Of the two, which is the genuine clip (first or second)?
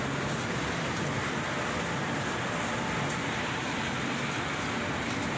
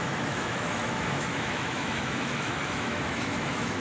first